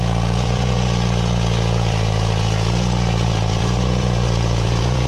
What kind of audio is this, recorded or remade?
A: remade